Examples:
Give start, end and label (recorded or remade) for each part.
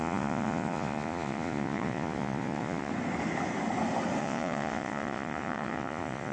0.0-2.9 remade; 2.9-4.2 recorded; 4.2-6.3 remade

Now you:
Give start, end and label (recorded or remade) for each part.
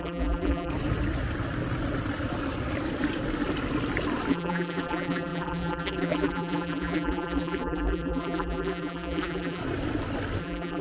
0.0-0.7 remade; 0.7-4.3 recorded; 4.3-9.6 remade; 9.6-10.4 recorded; 10.4-10.8 remade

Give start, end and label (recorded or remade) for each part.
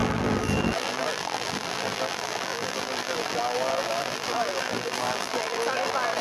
0.0-6.2 remade